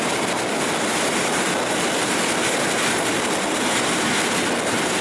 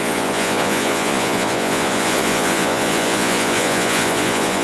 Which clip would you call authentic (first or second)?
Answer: first